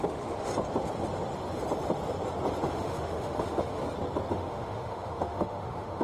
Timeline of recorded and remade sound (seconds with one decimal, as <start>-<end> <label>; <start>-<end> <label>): 0.0-0.5 remade; 0.5-2.7 recorded; 2.7-3.8 remade; 3.8-4.3 recorded; 4.3-6.0 remade

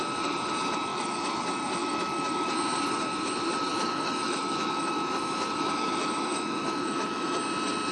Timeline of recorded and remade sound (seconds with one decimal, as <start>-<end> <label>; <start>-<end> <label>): 0.0-0.9 recorded; 0.9-1.4 remade; 1.4-1.8 recorded; 1.8-2.5 remade; 2.5-3.7 recorded; 3.7-7.4 remade; 7.4-7.9 recorded

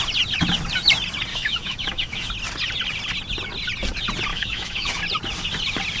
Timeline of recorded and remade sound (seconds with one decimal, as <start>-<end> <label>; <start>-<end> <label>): 0.0-1.3 recorded; 1.3-2.3 remade; 2.3-4.3 recorded; 4.3-5.0 remade; 5.0-6.0 recorded

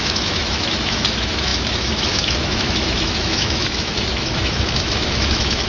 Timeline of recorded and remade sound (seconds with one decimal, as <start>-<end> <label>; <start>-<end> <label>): 0.0-5.7 remade

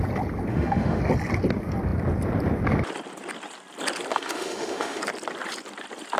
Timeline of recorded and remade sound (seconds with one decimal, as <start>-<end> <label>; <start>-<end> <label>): 0.0-0.5 recorded; 0.5-1.0 remade; 1.0-4.1 recorded; 4.1-5.0 remade; 5.0-6.2 recorded

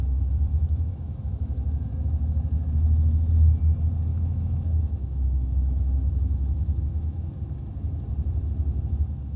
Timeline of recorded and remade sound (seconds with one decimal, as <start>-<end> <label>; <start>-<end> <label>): 0.0-0.5 recorded; 0.5-3.3 remade; 3.3-4.1 recorded; 4.1-7.3 remade; 7.3-9.4 recorded

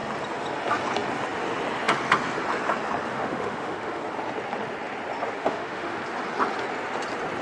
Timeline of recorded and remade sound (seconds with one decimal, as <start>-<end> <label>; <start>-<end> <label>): 0.0-3.1 recorded; 3.1-4.0 remade; 4.0-5.4 recorded; 5.4-6.0 remade; 6.0-7.4 recorded